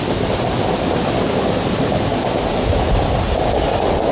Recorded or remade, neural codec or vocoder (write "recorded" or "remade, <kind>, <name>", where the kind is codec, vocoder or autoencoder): recorded